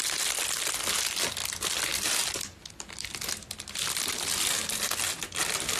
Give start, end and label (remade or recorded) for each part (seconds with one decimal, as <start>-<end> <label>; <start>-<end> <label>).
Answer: 0.0-5.8 recorded